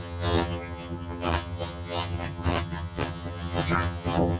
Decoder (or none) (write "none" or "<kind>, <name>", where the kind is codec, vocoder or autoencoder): vocoder, HiFi-GAN